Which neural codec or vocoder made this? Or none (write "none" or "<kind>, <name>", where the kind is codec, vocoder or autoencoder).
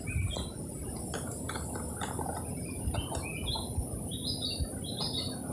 none